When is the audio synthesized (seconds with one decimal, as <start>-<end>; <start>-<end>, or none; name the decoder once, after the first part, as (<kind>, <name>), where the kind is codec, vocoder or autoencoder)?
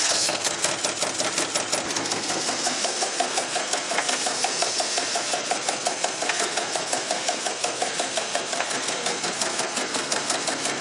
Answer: 0.0-0.7 (codec, SNAC); 2.0-10.8